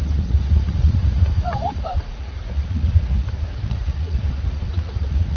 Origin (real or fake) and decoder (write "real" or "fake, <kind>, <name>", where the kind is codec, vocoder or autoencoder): fake, vocoder, Vocos